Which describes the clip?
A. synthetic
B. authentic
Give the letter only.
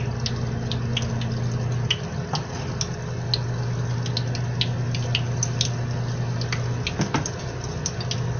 B